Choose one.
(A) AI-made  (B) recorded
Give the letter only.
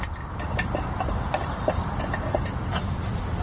B